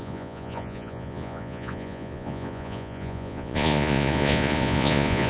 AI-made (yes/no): yes